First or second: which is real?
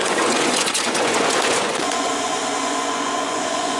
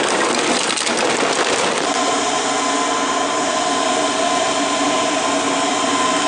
second